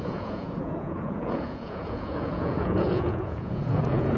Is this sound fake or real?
fake